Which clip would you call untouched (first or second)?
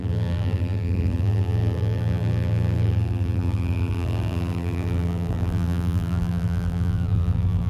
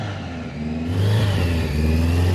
second